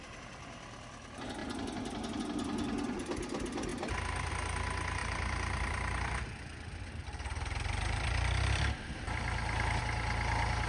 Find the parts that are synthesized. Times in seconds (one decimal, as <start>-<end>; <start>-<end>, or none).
5.0-9.8